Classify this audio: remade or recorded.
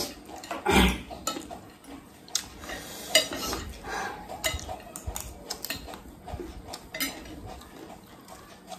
recorded